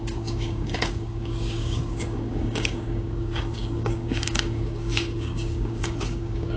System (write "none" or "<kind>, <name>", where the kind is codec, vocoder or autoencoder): codec, DAC